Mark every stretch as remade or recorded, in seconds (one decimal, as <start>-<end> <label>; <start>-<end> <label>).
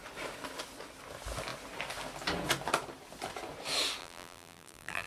0.0-4.0 recorded; 4.0-5.1 remade